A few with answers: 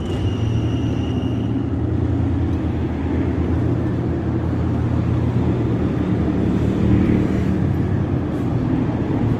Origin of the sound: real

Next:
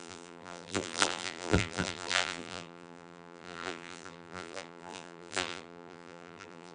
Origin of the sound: fake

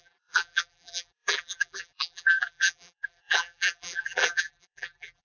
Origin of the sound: fake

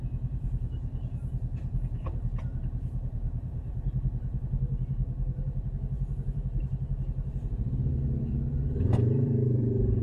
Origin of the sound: fake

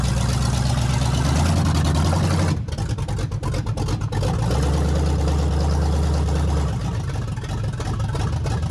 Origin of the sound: real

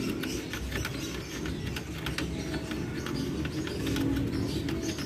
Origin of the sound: real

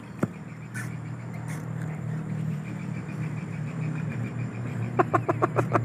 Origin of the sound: fake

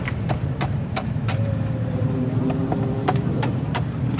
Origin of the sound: fake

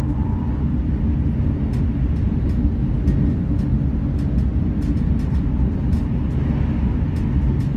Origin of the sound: real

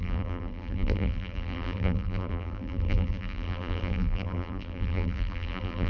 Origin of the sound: fake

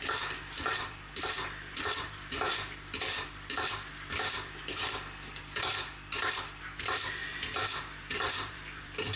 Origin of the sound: fake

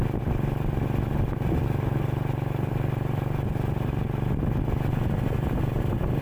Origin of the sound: real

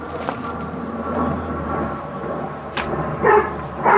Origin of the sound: fake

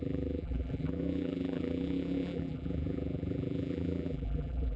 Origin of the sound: fake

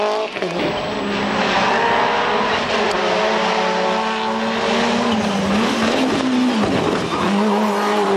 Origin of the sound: real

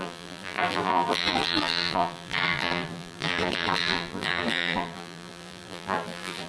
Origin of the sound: fake